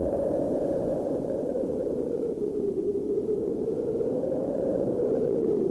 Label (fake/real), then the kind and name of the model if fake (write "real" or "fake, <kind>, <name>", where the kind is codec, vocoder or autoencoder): fake, vocoder, Vocos